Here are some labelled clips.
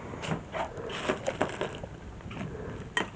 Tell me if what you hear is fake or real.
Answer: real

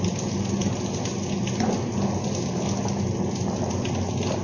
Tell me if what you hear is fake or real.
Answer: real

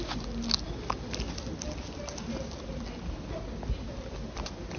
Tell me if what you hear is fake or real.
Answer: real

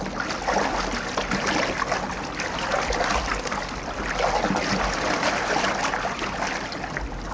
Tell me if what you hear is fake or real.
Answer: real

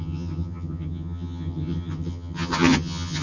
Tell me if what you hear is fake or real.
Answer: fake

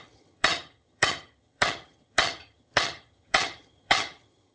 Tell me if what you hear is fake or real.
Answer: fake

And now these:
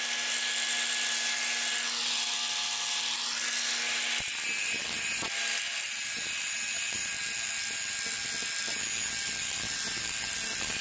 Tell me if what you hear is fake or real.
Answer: real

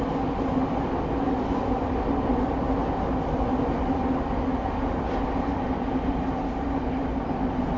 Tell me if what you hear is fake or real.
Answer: real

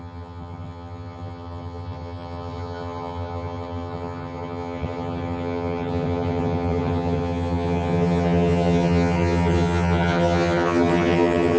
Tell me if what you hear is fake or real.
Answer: fake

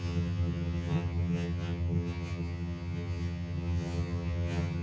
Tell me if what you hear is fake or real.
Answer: fake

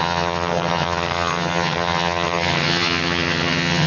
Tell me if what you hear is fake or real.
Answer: fake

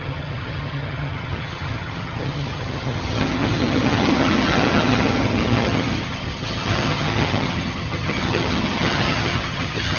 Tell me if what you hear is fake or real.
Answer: fake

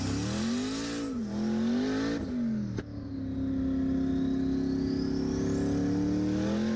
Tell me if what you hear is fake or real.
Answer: real